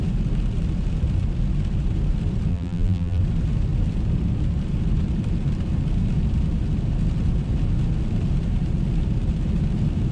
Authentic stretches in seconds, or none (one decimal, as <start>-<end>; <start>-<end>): 0.0-2.5; 3.2-10.1